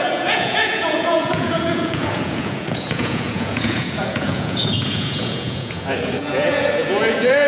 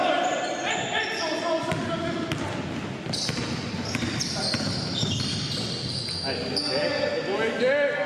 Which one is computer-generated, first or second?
first